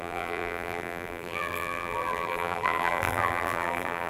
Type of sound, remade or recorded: remade